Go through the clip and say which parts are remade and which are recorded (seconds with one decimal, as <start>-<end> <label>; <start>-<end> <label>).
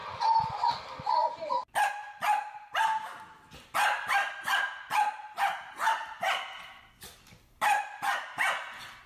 0.0-1.8 remade; 1.8-9.1 recorded